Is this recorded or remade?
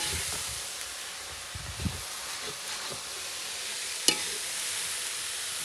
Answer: recorded